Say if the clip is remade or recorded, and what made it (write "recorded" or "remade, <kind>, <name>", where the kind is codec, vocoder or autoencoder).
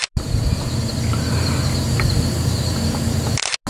recorded